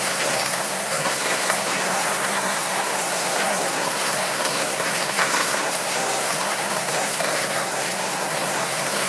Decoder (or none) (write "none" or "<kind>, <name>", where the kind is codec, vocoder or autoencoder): codec, SNAC